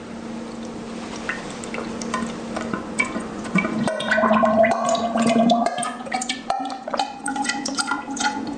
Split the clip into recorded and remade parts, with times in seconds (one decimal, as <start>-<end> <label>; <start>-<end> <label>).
0.0-2.7 recorded; 2.7-8.6 remade